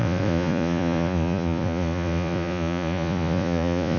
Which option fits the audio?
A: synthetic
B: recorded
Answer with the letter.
A